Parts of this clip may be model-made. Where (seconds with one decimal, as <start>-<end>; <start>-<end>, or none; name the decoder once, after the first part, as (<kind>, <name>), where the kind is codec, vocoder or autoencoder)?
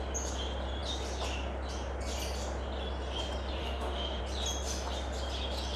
3.6-4.2 (autoencoder, DAC-VAE)